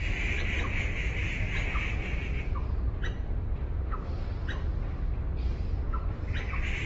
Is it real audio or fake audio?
real